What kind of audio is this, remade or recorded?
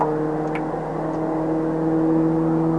recorded